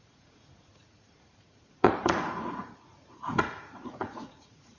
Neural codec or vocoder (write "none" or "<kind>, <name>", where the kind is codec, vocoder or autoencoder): vocoder, Vocos